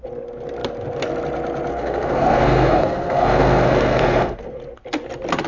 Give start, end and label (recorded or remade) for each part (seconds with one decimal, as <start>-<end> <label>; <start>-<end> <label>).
0.0-1.7 recorded; 1.7-4.6 remade; 4.6-5.5 recorded